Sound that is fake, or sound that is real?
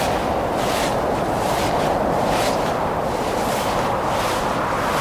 real